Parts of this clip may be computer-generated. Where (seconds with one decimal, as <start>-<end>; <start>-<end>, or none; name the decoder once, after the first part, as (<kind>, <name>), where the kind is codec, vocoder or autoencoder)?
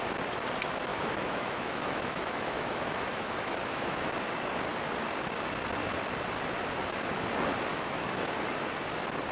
0.9-4.1 (autoencoder, DAC-VAE); 7.7-8.3